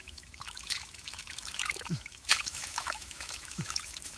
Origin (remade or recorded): remade